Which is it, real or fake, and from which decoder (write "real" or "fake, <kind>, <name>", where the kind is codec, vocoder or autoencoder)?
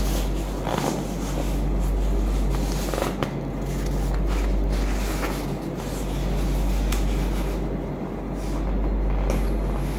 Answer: real